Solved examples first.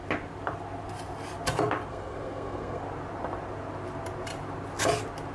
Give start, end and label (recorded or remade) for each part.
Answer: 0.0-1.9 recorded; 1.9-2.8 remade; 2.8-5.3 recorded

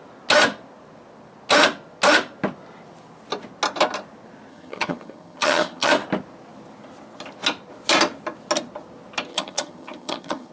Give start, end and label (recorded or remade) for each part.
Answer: 0.0-4.5 recorded; 4.5-5.9 remade; 5.9-9.3 recorded; 9.3-10.5 remade